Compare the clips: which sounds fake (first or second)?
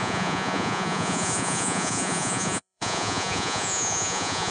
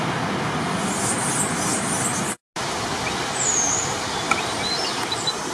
first